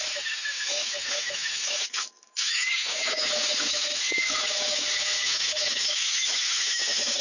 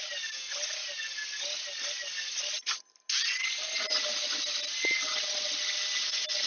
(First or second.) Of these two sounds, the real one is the second